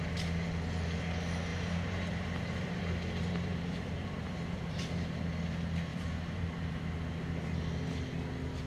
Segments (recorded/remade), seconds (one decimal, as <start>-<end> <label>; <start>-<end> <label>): 0.0-1.5 recorded; 1.5-5.3 remade; 5.3-5.9 recorded; 5.9-6.8 remade; 6.8-8.7 recorded

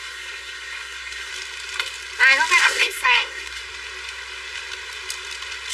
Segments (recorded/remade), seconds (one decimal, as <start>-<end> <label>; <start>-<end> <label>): 0.0-1.3 remade; 1.3-2.6 recorded; 2.6-3.6 remade; 3.6-5.7 recorded

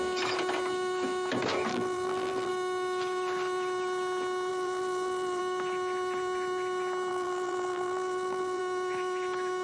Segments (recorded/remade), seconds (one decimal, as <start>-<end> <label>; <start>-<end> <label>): 0.0-1.7 recorded; 1.7-2.5 remade; 2.5-4.5 recorded; 4.5-5.4 remade; 5.4-7.1 recorded; 7.1-8.6 remade; 8.6-9.6 recorded

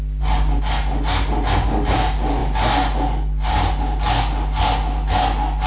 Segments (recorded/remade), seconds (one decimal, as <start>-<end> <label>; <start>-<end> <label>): 0.0-5.7 recorded

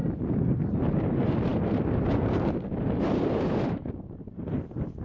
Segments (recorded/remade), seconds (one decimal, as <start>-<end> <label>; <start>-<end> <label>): 0.0-0.7 recorded; 0.7-5.0 remade

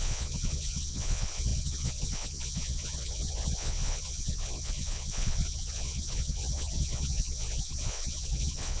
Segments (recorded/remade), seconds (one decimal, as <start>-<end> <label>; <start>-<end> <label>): 0.0-8.8 remade